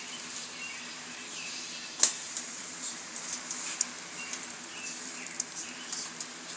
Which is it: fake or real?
fake